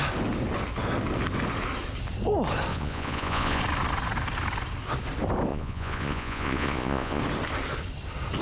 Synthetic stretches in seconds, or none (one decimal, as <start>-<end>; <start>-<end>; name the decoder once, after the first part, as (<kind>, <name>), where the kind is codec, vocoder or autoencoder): 2.7-3.6 (vocoder, Vocos); 5.5-7.2